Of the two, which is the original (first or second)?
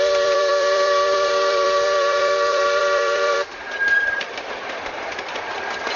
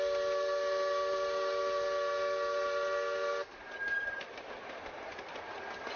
second